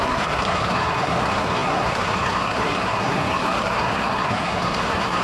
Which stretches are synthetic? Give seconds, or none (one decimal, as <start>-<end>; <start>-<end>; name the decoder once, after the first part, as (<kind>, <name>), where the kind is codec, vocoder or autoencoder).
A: 0.0-5.2 (codec, SNAC)